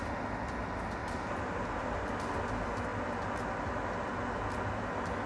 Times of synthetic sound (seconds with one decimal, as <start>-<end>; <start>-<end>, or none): 1.0-2.1